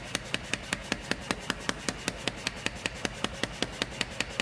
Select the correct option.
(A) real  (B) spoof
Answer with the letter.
A